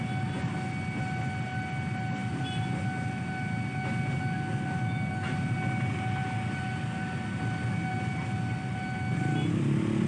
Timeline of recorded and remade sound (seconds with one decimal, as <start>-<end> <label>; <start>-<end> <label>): 0.0-10.1 recorded